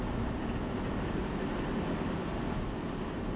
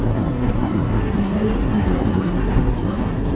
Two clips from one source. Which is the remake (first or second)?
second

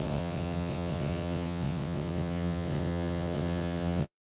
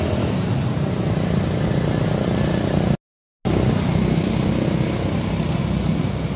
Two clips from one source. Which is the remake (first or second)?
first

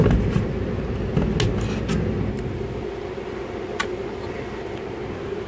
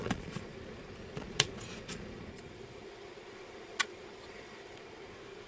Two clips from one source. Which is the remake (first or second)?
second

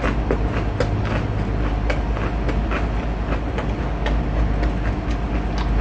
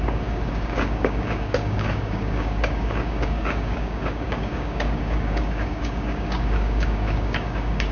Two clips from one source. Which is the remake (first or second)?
second